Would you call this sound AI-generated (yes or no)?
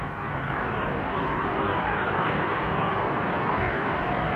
yes